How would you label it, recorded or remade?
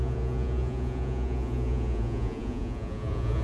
remade